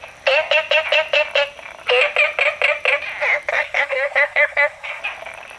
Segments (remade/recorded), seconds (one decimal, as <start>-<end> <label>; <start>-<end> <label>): 0.0-3.5 recorded; 3.5-5.0 remade; 5.0-5.6 recorded